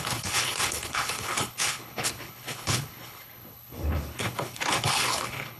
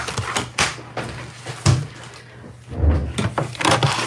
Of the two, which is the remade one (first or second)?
first